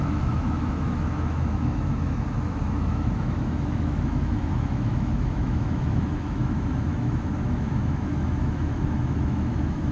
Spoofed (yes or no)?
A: yes